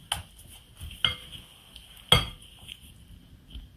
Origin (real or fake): real